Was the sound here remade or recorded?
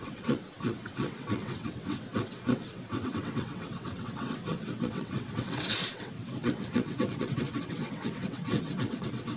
remade